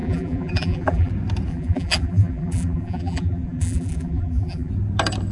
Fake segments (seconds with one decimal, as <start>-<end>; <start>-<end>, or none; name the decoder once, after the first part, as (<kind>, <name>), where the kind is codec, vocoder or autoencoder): 0.0-1.1 (vocoder, BigVGAN v2); 1.5-4.7